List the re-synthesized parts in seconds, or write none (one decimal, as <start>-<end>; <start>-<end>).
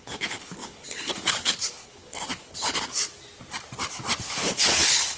0.0-3.0; 4.2-5.2